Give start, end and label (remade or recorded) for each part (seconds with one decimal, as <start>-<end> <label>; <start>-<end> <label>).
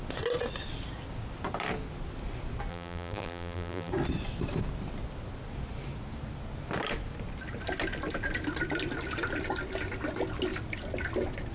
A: 0.0-2.7 recorded; 2.7-3.9 remade; 3.9-11.5 recorded